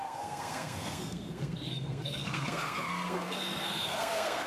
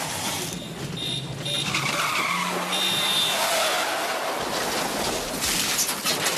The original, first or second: second